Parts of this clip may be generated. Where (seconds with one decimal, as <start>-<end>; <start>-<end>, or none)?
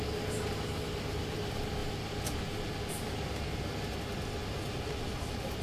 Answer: 4.4-5.0